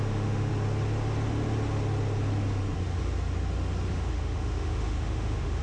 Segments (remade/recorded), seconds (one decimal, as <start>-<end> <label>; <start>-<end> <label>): 0.0-0.5 remade; 0.5-3.9 recorded; 3.9-5.6 remade